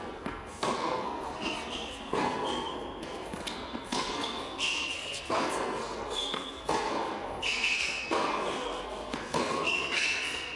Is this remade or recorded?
remade